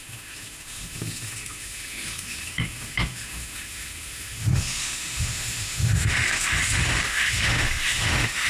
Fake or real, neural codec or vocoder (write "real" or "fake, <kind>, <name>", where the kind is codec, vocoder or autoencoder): fake, autoencoder, DAC-VAE